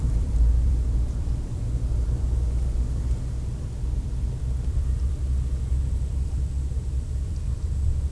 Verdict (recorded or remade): remade